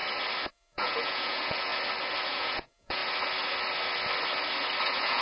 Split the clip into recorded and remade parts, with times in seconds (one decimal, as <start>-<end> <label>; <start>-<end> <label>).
0.0-0.5 recorded; 0.5-1.7 remade; 1.7-2.3 recorded; 2.3-3.0 remade; 3.0-4.8 recorded; 4.8-5.2 remade